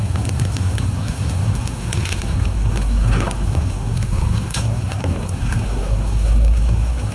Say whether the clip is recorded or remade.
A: remade